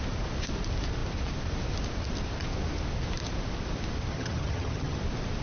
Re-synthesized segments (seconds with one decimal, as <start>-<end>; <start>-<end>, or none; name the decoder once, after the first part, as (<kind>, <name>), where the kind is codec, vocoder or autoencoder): 4.1-5.0 (vocoder, HiFi-GAN)